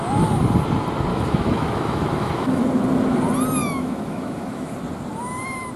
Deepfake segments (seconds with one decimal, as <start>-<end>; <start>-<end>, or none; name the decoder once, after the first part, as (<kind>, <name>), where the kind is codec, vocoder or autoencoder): 1.1-2.6 (autoencoder, DAC-VAE); 3.6-4.7